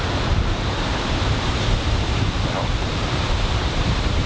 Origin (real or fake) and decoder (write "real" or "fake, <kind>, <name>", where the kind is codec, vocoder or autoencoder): fake, vocoder, BigVGAN v2